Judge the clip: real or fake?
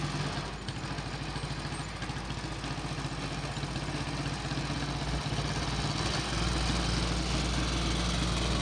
real